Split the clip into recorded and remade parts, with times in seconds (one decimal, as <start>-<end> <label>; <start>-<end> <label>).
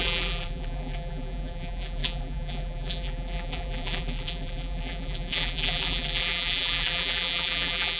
0.0-8.0 remade